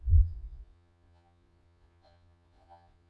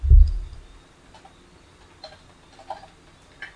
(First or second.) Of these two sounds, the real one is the second